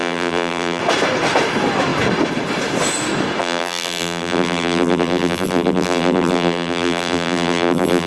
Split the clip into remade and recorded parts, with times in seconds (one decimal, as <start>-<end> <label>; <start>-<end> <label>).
0.0-0.8 remade; 0.8-3.4 recorded; 3.4-8.1 remade